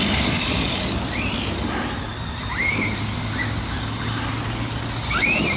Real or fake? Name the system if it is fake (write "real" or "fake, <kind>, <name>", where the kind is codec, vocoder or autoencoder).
real